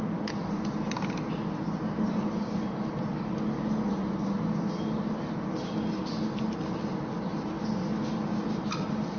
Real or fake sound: real